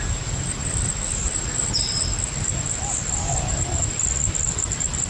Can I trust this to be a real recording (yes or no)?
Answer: no